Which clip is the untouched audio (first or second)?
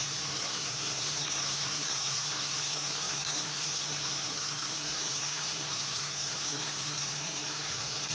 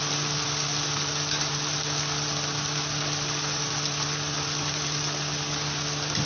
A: second